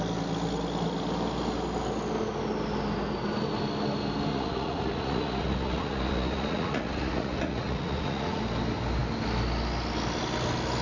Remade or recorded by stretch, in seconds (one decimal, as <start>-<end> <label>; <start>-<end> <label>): 0.0-4.3 recorded; 4.3-8.4 remade; 8.4-10.8 recorded